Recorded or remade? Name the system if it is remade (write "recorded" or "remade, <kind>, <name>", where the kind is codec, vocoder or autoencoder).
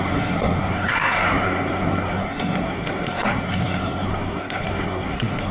remade, codec, SNAC